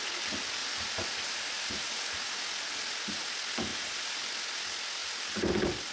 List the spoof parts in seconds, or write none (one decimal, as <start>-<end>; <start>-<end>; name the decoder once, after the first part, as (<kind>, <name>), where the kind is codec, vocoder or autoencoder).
0.6-2.4 (vocoder, BigVGAN v2); 3.7-4.3